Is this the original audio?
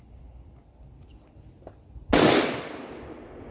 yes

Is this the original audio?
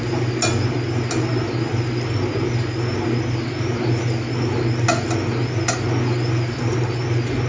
yes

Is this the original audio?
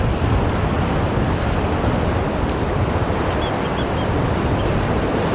yes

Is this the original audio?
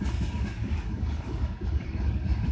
no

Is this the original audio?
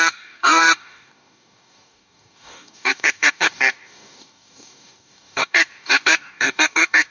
no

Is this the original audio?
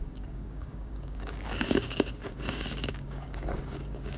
no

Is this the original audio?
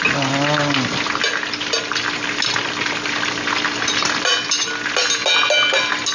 yes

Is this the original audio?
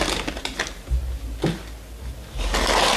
yes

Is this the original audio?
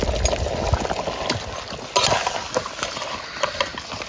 yes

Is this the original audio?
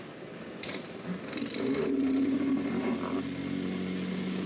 yes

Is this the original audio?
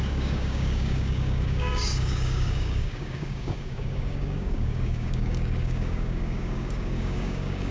no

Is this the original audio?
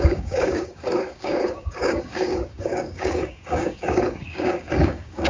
no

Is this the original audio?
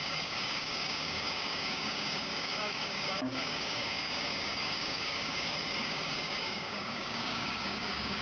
no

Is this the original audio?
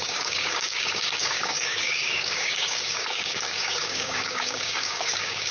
no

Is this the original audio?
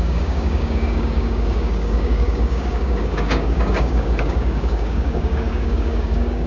no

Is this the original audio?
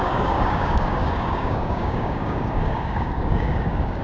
no